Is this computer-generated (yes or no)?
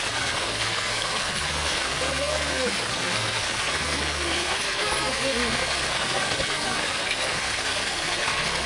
yes